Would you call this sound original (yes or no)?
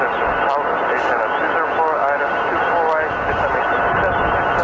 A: yes